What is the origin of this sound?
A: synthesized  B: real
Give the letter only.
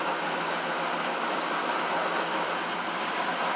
B